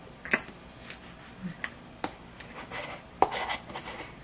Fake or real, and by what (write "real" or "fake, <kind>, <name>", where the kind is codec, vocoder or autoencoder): real